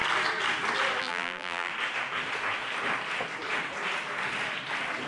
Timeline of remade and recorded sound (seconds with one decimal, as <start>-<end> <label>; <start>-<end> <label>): 0.0-1.0 recorded; 1.0-1.7 remade; 1.7-5.1 recorded